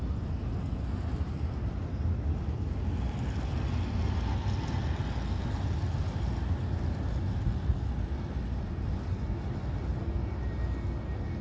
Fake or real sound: real